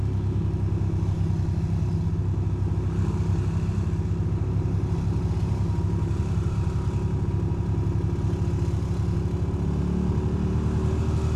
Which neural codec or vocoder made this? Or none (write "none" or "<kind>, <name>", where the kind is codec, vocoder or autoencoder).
none